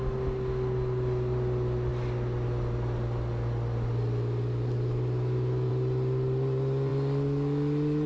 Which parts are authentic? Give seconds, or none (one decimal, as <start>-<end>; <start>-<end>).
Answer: 0.0-8.1